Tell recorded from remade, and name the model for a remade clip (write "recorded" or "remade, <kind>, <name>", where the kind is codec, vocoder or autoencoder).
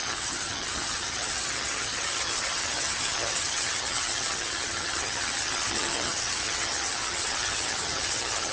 remade, vocoder, HiFi-GAN